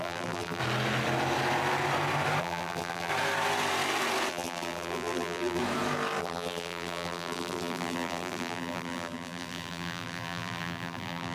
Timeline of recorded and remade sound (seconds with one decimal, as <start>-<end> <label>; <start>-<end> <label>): 0.0-0.6 remade; 0.6-2.4 recorded; 2.4-3.1 remade; 3.1-4.3 recorded; 4.3-5.6 remade; 5.6-6.2 recorded; 6.2-11.3 remade